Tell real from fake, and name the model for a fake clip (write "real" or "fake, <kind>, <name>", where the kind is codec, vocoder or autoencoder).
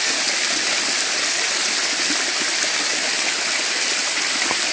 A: real